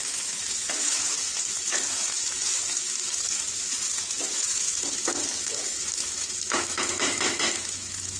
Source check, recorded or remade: remade